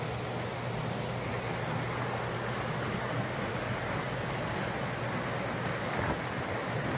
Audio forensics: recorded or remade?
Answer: recorded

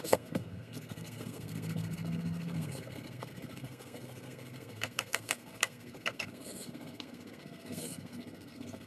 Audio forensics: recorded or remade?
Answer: remade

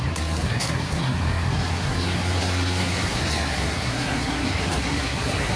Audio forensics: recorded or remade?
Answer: remade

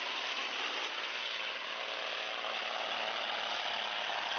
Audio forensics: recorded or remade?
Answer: recorded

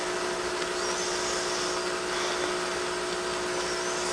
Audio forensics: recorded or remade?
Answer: recorded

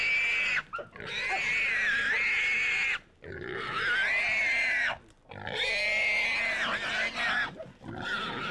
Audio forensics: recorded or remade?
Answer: recorded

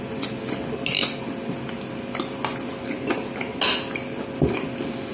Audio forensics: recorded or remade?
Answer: recorded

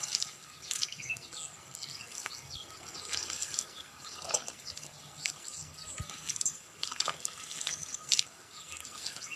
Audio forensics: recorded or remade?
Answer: remade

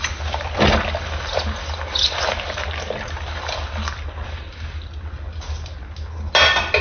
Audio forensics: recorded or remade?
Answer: recorded